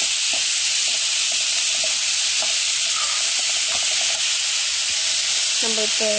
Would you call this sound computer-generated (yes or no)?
no